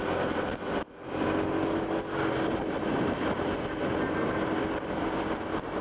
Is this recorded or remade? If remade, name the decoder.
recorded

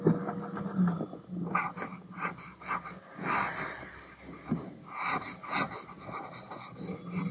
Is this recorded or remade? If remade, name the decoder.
recorded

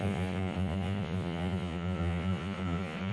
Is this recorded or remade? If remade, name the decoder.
remade, vocoder, Vocos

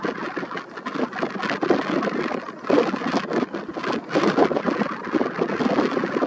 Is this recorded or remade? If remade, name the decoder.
recorded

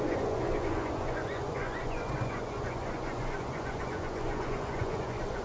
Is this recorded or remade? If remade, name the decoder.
remade, vocoder, Vocos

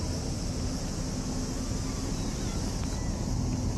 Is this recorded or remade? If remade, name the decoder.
recorded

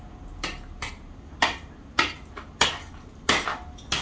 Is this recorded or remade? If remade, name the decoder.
recorded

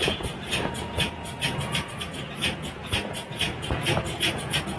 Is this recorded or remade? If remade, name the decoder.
remade, vocoder, Vocos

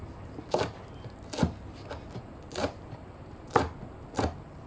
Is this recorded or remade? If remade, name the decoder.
recorded